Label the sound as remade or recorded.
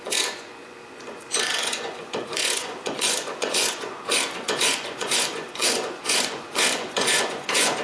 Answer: remade